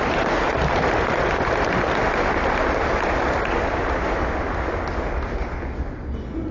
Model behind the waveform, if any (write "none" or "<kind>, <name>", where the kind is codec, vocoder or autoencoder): none